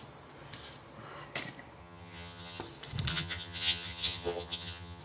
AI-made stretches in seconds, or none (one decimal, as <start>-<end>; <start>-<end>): 1.8-2.6; 3.1-5.0